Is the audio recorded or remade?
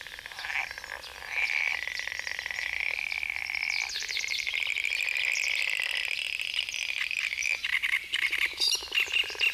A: remade